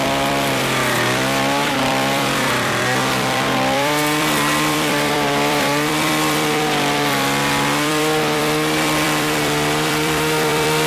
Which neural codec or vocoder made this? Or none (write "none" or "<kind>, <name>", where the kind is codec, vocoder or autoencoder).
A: vocoder, BigVGAN v2